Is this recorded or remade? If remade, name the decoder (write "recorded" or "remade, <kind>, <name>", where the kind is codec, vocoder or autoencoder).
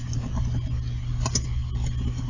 recorded